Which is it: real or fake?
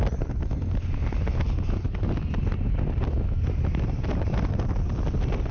real